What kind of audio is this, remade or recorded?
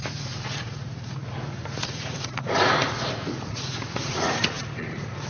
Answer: remade